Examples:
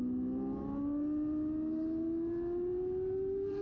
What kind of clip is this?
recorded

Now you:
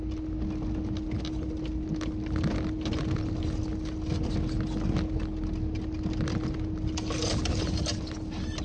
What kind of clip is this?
recorded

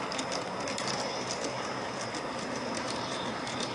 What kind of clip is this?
recorded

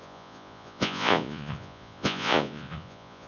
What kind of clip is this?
remade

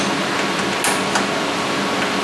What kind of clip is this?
recorded